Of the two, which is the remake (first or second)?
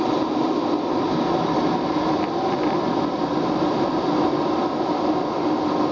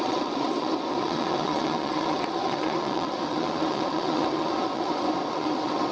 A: second